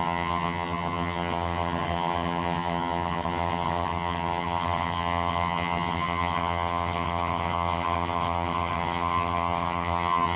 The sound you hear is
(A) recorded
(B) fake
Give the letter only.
B